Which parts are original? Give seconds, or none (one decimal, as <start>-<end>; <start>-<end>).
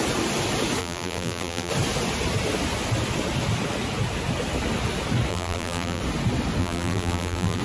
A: 0.0-0.8; 1.7-5.3; 6.0-6.6